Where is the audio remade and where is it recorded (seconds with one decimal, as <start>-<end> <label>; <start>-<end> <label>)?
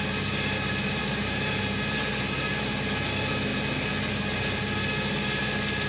0.0-1.0 recorded; 1.0-1.6 remade; 1.6-5.9 recorded